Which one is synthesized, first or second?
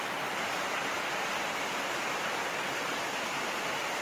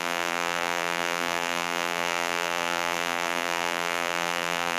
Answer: second